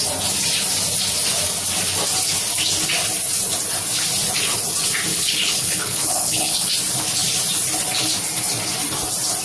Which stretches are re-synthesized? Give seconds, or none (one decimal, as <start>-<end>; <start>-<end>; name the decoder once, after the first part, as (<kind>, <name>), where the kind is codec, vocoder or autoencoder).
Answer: 5.1-6.7 (codec, HILCodec)